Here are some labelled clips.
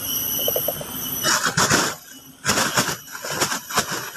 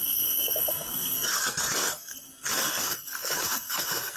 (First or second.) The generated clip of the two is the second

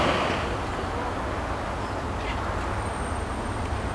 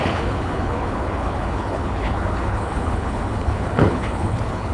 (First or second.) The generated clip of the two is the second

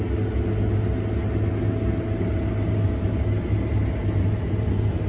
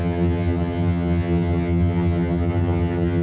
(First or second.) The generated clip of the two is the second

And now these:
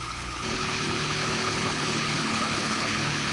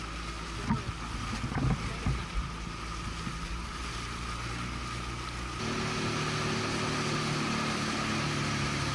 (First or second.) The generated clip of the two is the first